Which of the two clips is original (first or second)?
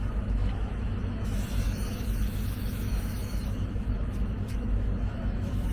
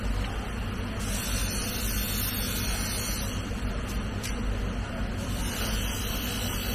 second